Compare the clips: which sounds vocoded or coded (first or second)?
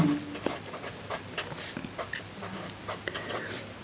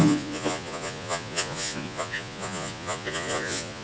second